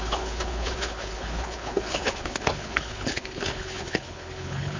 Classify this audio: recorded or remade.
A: remade